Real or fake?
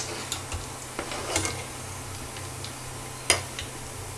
real